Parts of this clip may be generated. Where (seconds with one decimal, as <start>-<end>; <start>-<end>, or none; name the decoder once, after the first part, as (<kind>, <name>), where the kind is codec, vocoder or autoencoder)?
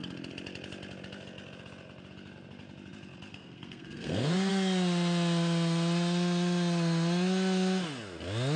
3.3-4.5 (codec, SNAC)